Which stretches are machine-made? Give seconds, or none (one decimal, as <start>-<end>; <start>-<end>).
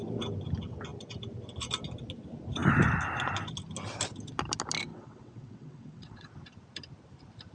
4.9-6.3